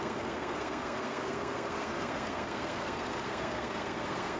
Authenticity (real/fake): fake